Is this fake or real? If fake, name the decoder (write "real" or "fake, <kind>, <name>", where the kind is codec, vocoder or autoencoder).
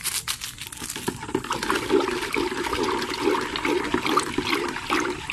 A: real